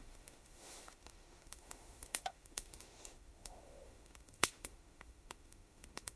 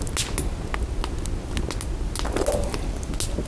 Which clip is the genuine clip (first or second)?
second